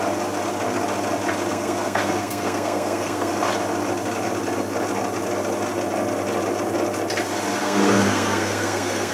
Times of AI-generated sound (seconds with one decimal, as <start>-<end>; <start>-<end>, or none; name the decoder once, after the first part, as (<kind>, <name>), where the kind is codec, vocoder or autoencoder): 1.5-3.3 (codec, SNAC); 7.6-9.1